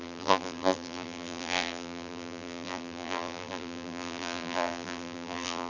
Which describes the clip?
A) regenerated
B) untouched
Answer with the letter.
A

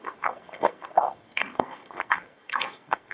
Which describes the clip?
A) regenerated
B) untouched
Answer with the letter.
A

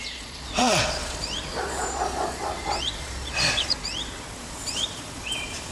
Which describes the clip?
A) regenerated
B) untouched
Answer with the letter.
A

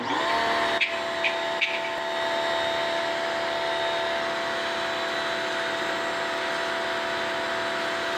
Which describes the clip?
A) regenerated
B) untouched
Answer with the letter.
B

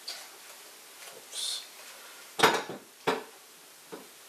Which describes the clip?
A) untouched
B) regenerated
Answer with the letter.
A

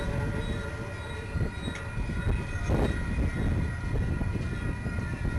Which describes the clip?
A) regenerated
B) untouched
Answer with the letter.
B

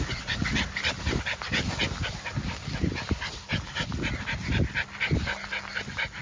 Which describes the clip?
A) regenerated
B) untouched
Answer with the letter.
B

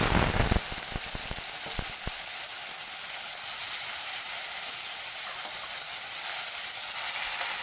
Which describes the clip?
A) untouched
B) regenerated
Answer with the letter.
A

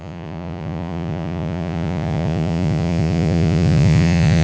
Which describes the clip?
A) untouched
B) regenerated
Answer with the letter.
B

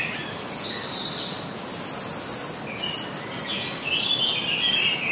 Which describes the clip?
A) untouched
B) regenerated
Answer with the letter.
A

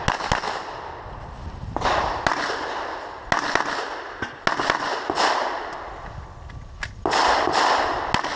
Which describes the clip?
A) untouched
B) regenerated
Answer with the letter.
A